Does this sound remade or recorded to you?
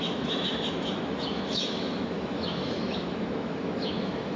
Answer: remade